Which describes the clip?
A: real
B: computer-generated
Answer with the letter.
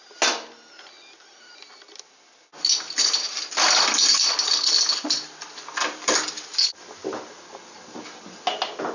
A